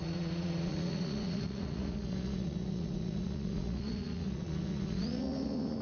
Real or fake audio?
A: fake